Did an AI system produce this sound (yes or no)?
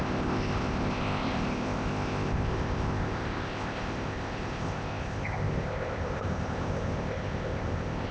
yes